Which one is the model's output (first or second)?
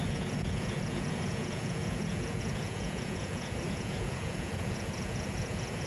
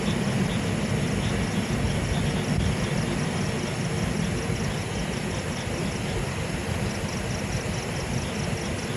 first